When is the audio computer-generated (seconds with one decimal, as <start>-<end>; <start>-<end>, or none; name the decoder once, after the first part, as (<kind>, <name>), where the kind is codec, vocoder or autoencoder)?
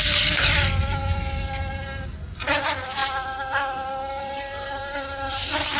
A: none